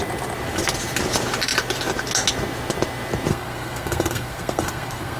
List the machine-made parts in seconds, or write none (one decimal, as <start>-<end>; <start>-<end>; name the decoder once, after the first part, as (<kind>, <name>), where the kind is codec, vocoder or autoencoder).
3.3-5.2 (codec, SNAC)

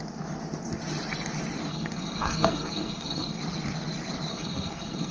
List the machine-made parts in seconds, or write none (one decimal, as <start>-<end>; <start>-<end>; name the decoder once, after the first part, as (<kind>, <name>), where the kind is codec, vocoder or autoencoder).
1.7-3.4 (codec, SNAC); 4.3-5.1

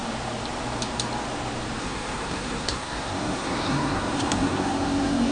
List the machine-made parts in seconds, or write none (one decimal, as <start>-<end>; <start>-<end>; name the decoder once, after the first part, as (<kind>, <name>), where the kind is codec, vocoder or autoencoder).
1.8-5.3 (codec, SNAC)

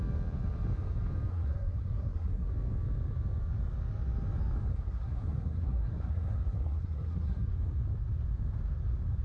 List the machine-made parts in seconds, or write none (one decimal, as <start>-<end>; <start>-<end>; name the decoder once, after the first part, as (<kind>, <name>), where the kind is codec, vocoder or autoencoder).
1.3-2.5 (codec, SNAC); 4.7-7.5

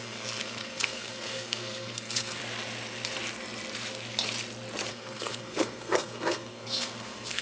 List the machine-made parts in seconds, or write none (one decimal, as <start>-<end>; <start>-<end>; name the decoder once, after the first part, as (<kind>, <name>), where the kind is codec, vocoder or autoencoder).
0.0-2.4 (codec, SNAC); 4.9-7.4

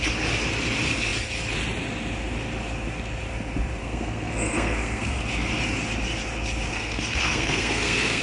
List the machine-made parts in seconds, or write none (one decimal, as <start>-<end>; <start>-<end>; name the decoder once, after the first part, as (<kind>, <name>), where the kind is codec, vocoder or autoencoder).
3.8-5.2 (codec, SNAC); 6.7-8.2

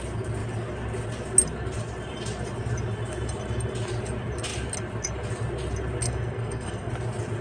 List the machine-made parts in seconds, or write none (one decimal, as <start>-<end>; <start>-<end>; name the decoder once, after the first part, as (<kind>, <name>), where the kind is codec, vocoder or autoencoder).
6.0-6.9 (codec, SNAC)

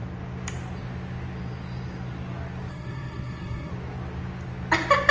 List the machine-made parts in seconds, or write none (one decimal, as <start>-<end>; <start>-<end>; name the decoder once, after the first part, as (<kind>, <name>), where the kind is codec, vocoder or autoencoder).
2.7-3.7 (codec, SNAC)